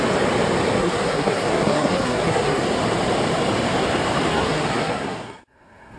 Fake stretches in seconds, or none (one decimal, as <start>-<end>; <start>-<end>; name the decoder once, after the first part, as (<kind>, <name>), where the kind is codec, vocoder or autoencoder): 0.8-2.6 (codec, SNAC); 4.3-6.0